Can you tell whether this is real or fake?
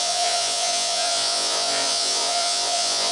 fake